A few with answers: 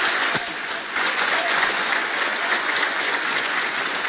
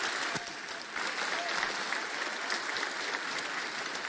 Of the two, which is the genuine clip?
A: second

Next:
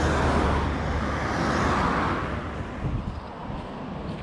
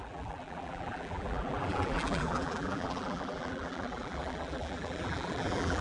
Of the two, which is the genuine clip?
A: first